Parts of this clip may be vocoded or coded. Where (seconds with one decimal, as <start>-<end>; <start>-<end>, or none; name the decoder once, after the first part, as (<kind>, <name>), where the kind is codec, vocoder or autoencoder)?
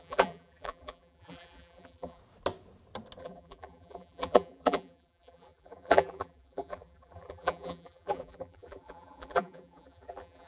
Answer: 0.0-2.2 (vocoder, BigVGAN v2); 3.2-10.5